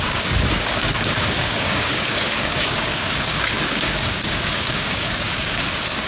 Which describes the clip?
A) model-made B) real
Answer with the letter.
A